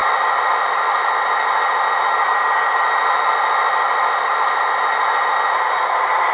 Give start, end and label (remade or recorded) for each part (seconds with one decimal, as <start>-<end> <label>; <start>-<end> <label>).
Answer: 0.0-6.3 recorded